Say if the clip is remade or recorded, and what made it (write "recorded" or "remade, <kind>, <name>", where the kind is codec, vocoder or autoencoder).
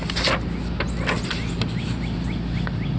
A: recorded